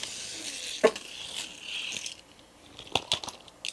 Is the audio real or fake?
real